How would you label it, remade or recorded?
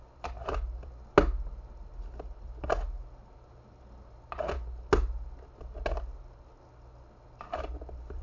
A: recorded